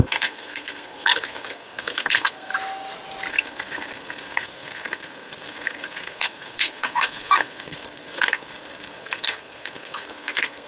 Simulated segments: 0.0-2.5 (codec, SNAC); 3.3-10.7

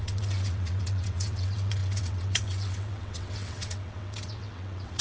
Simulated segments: 0.0-5.0 (vocoder, WaveNeXt)

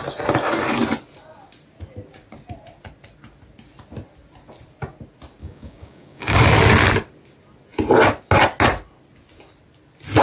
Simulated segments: 5.4-6.4 (codec, DAC)

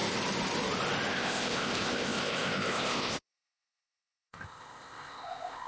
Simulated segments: 1.1-5.7 (codec, ZipCodec)

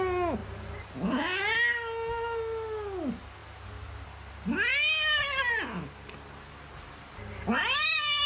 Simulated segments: none

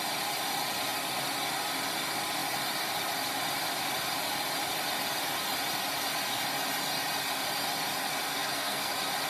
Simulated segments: 8.3-8.9 (codec, SNAC)